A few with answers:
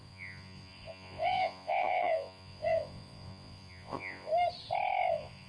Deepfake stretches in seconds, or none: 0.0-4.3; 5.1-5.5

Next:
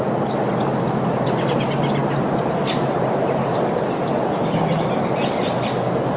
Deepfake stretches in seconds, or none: none

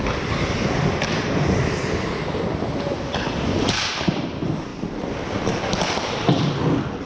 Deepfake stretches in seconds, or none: 0.0-4.7

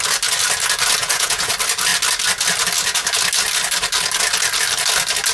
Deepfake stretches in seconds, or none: 1.0-1.5

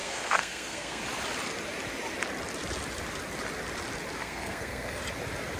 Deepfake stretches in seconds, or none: 0.0-1.0; 4.2-5.0